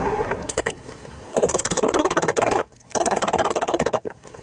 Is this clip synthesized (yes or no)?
yes